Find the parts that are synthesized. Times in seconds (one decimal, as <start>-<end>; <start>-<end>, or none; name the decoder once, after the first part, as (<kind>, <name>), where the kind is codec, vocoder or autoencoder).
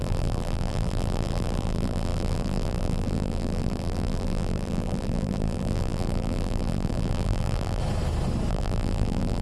0.0-7.8 (vocoder, BigVGAN v2); 8.5-9.4